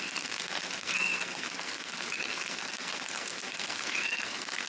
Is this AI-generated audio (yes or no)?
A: yes